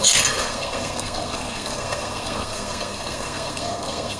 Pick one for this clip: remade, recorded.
remade